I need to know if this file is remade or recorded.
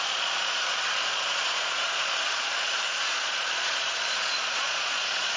remade